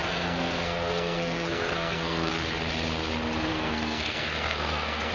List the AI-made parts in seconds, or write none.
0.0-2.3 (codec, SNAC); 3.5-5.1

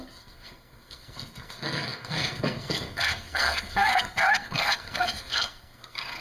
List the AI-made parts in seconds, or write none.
0.0-6.2 (codec, SNAC)

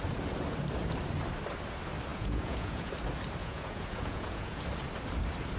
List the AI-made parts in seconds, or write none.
2.1-2.9 (vocoder, Vocos); 3.4-4.6

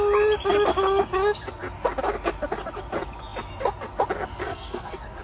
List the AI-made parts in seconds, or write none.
4.4-5.2 (codec, SNAC)

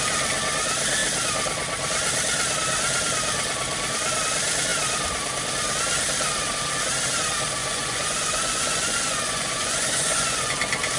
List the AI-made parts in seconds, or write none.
7.6-10.5 (vocoder, Vocos)